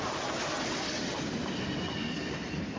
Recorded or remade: recorded